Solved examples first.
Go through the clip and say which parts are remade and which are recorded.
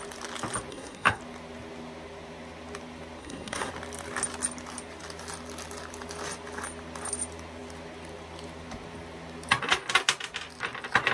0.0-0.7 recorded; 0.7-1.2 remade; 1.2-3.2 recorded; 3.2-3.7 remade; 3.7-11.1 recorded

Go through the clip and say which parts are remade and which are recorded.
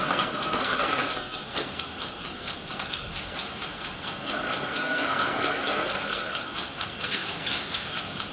0.0-8.3 remade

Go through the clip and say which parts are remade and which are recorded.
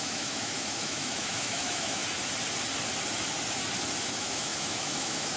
0.0-2.0 remade; 2.0-4.0 recorded; 4.0-5.4 remade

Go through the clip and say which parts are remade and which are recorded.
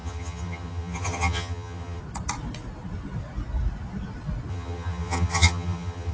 0.0-2.0 remade; 2.0-4.5 recorded; 4.5-6.1 remade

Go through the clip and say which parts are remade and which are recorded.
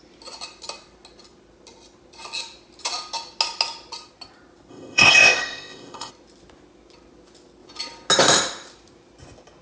0.0-4.7 recorded; 4.7-6.1 remade; 6.1-9.6 recorded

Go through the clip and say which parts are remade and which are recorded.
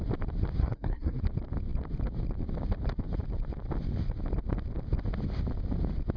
0.0-0.6 recorded; 0.6-1.2 remade; 1.2-6.2 recorded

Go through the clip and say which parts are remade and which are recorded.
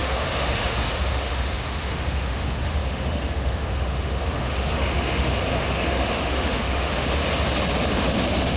0.0-7.2 remade; 7.2-7.9 recorded; 7.9-8.6 remade